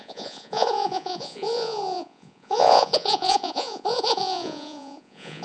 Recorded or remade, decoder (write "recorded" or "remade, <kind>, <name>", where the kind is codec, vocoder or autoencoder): remade, vocoder, Vocos